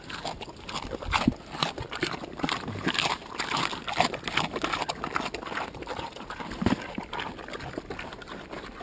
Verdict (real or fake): real